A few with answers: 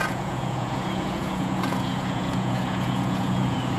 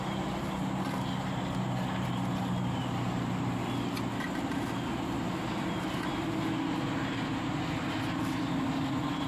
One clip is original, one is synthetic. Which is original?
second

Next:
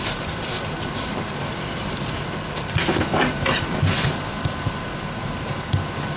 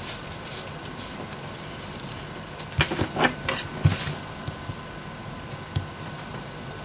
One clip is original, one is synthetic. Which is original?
second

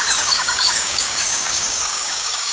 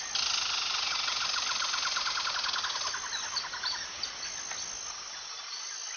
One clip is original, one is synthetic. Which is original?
second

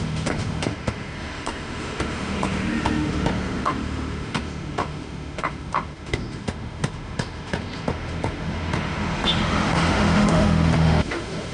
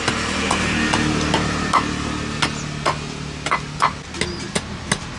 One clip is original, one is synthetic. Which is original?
second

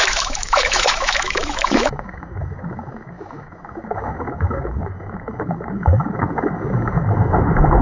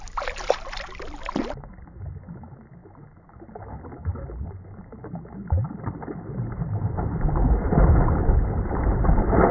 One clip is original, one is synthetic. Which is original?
second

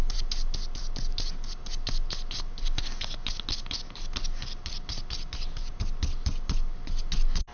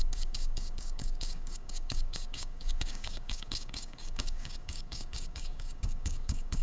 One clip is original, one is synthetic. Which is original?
first